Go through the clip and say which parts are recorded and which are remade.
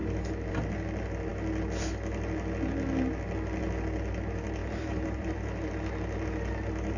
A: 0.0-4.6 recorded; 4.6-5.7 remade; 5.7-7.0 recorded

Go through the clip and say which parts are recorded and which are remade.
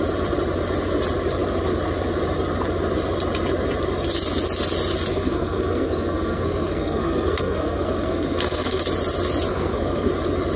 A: 0.0-5.1 recorded; 5.1-8.8 remade; 8.8-9.5 recorded; 9.5-10.1 remade; 10.1-10.6 recorded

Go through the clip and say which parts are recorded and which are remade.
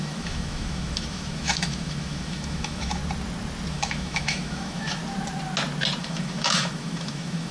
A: 0.0-3.0 remade; 3.0-3.7 recorded; 3.7-5.0 remade; 5.0-6.0 recorded; 6.0-7.5 remade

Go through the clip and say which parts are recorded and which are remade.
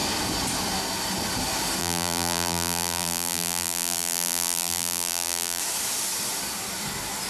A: 0.0-1.8 recorded; 1.8-5.6 remade; 5.6-7.3 recorded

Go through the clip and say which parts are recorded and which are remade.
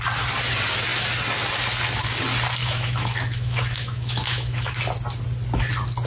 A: 0.0-2.6 recorded; 2.6-4.8 remade; 4.8-6.1 recorded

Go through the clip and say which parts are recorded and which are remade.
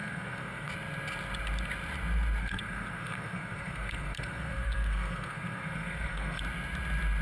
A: 0.0-0.7 remade; 0.7-2.4 recorded; 2.4-6.4 remade; 6.4-7.2 recorded